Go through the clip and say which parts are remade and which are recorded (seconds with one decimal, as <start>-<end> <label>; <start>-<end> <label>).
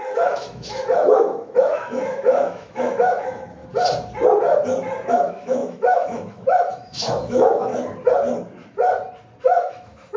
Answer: 0.0-3.6 remade; 3.6-5.1 recorded; 5.1-7.7 remade; 7.7-9.4 recorded; 9.4-10.2 remade